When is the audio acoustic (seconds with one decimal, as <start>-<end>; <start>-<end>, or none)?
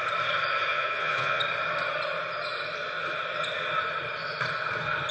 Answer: 0.0-0.7; 1.4-5.1